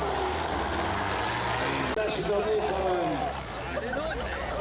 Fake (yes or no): no